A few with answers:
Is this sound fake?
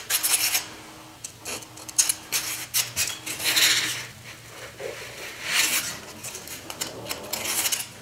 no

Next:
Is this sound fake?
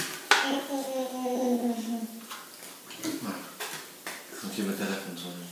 no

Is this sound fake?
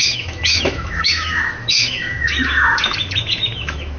yes